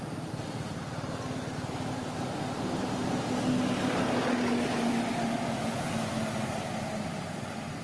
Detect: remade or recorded recorded